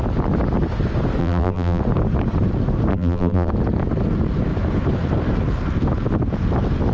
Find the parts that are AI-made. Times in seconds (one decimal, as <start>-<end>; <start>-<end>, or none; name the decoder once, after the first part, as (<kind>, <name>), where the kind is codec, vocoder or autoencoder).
1.2-1.8 (vocoder, BigVGAN v2); 2.9-3.5